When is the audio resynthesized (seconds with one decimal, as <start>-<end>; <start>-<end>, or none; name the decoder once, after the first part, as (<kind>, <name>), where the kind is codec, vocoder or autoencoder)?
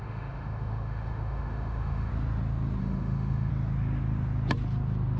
0.0-2.1 (autoencoder, DAC-VAE); 2.8-3.5